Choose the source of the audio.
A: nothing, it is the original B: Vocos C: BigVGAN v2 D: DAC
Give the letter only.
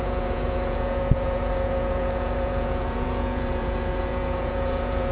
B